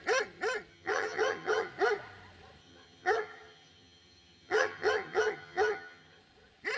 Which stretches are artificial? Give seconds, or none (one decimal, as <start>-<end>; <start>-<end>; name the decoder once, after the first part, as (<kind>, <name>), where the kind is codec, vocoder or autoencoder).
0.7-1.7 (vocoder, HiFi-GAN); 2.6-6.2